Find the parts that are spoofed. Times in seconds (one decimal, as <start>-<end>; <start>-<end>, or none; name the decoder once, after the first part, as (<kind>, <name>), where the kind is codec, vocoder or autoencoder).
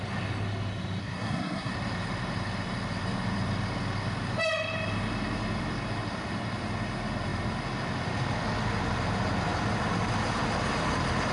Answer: 1.0-1.7 (codec, SNAC)